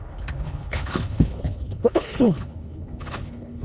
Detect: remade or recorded remade